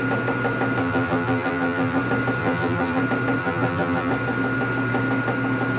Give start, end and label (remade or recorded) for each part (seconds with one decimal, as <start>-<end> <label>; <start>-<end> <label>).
0.0-0.8 recorded; 0.8-2.0 remade; 2.0-2.4 recorded; 2.4-3.0 remade; 3.0-3.4 recorded; 3.4-4.1 remade; 4.1-5.8 recorded